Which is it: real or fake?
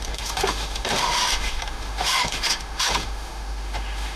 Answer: fake